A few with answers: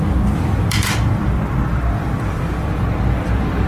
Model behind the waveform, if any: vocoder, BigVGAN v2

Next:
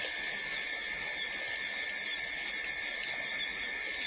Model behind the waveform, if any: none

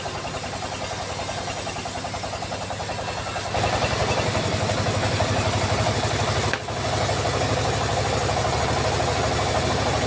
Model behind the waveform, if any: none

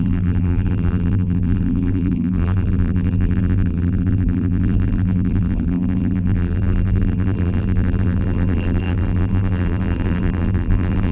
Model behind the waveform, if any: vocoder, BigVGAN v2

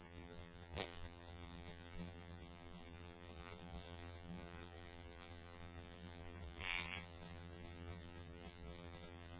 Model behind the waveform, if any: vocoder, BigVGAN v2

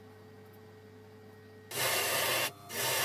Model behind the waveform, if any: none